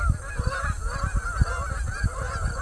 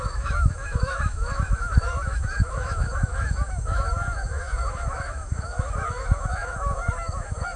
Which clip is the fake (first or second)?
second